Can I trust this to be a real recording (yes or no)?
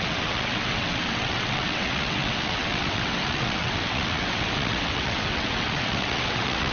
no